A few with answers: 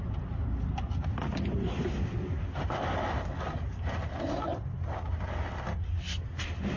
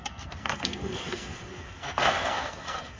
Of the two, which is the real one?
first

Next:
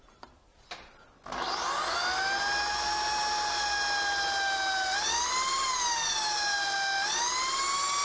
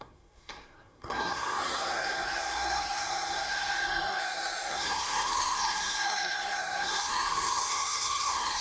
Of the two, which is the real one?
first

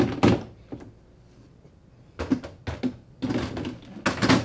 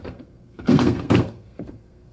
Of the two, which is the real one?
first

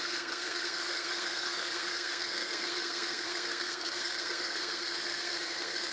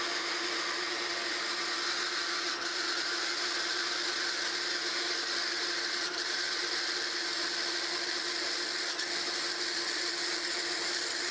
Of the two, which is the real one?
second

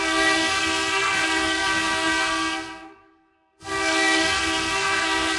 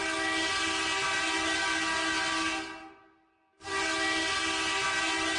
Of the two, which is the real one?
second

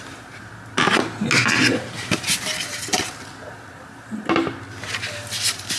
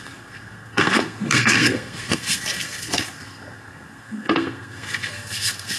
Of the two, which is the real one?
first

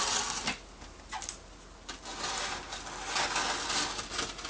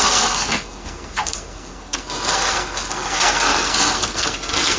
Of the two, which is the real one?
first